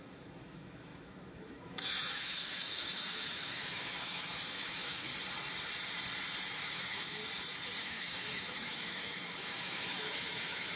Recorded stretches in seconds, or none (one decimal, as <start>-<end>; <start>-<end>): 5.1-6.5; 7.2-7.8